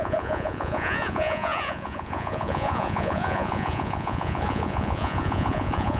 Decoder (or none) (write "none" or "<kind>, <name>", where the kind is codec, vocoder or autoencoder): vocoder, Vocos